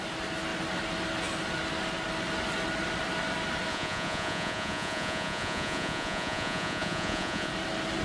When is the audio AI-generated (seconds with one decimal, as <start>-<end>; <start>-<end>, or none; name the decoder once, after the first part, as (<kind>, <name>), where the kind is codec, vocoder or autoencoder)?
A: 3.7-7.5 (vocoder, Vocos)